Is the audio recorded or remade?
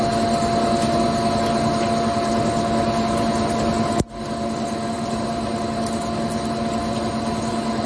recorded